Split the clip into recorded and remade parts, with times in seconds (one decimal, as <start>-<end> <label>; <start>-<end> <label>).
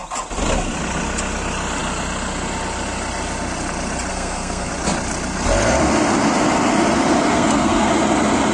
0.0-4.1 recorded; 4.1-4.7 remade; 4.7-7.3 recorded; 7.3-7.9 remade; 7.9-8.5 recorded